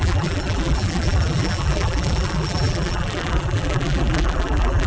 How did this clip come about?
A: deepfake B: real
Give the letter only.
A